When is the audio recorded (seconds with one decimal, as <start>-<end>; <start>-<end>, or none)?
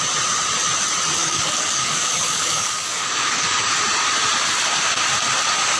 0.0-1.2; 3.7-5.8